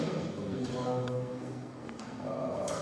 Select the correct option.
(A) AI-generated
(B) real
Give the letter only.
A